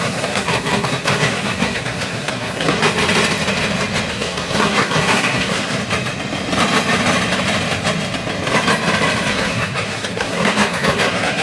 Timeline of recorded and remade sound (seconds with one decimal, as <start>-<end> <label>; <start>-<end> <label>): 0.0-2.8 remade; 2.8-4.1 recorded; 4.1-5.8 remade; 5.8-9.3 recorded; 9.3-11.4 remade